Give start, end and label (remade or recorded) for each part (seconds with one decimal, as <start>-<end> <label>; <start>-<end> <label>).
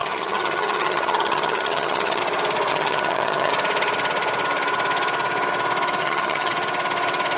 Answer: 0.0-2.2 remade; 2.2-2.7 recorded; 2.7-3.5 remade; 3.5-6.0 recorded; 6.0-6.5 remade; 6.5-7.4 recorded